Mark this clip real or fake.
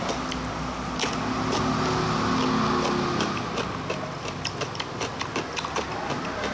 real